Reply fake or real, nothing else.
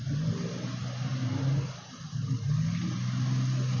real